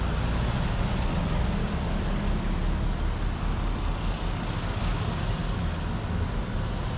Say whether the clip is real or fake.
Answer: real